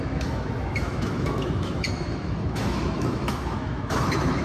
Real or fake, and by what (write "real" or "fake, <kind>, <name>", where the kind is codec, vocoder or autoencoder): fake, autoencoder, DAC-VAE